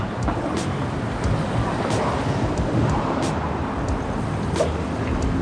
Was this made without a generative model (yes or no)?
no